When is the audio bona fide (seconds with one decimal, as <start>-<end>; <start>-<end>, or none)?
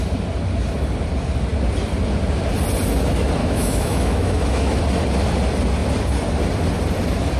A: 0.0-3.4; 4.8-7.4